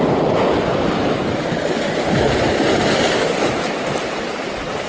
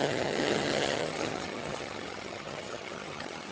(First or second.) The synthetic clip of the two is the second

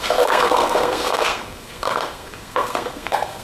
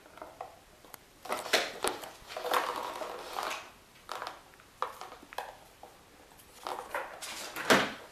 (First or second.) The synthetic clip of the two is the first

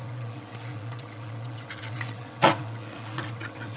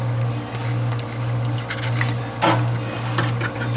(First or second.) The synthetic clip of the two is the first